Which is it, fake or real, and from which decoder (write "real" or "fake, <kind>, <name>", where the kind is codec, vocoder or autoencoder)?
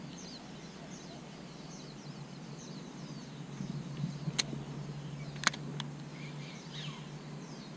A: real